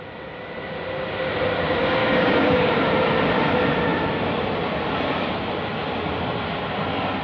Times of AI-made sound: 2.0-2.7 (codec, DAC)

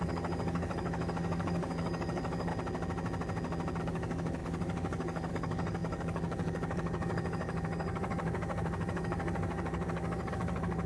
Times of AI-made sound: 0.0-2.5 (codec, DAC); 3.8-10.9

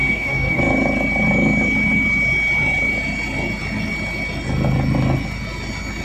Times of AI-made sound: 0.0-0.6 (codec, DAC)

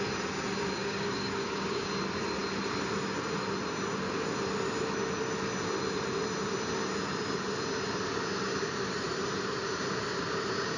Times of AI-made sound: 0.8-1.9 (codec, DAC)

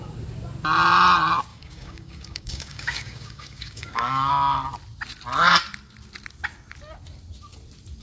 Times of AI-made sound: 1.5-4.3 (codec, DAC)

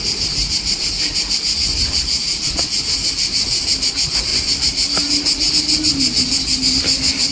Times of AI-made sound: none

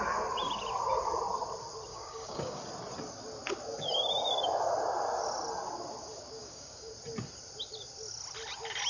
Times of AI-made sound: 1.9-2.6 (codec, DAC); 6.4-6.9